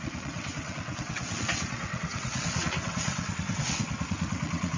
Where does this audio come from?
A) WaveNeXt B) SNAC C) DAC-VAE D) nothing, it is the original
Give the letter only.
A